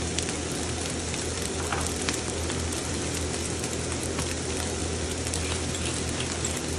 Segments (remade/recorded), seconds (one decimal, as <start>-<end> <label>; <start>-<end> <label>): 0.0-6.8 recorded